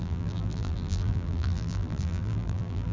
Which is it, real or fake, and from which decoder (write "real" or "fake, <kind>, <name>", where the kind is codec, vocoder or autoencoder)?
fake, vocoder, BigVGAN v2